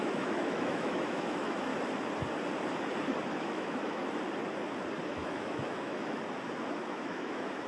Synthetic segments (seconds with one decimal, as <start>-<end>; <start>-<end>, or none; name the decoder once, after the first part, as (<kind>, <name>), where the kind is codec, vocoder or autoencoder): 0.0-1.7 (autoencoder, DAC-VAE); 3.3-4.0; 5.0-6.2; 6.8-7.7